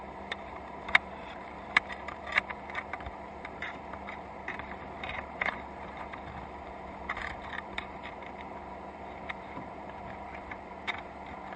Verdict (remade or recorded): remade